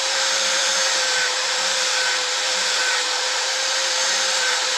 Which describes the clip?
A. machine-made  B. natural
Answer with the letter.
A